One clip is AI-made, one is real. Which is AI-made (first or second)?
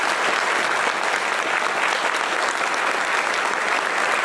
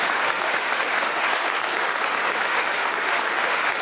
second